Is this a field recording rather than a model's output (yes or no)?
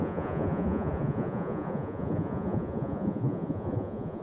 no